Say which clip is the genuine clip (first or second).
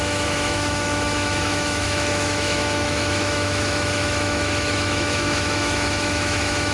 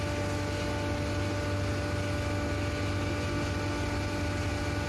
second